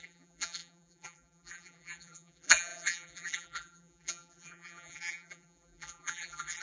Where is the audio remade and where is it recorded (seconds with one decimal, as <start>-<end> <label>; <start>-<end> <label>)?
0.0-6.6 remade